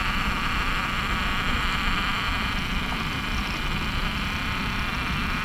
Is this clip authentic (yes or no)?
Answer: no